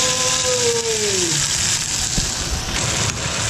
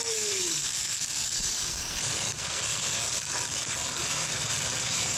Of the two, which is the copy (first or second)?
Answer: second